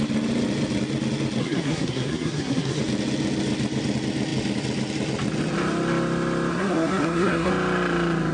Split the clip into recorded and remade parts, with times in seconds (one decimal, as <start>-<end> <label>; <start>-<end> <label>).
0.0-1.4 recorded; 1.4-2.8 remade; 2.8-6.5 recorded; 6.5-7.5 remade; 7.5-8.3 recorded